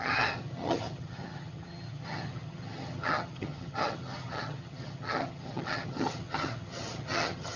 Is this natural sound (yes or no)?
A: no